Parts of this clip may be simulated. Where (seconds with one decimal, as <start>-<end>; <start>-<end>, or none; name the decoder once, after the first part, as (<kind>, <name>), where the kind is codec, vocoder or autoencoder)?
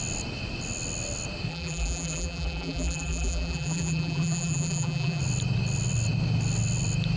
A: 1.5-5.2 (vocoder, BigVGAN v2)